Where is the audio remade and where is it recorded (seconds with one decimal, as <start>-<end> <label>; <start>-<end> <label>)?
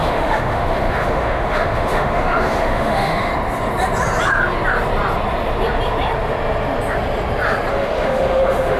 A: 0.0-3.3 remade; 3.3-7.7 recorded; 7.7-8.8 remade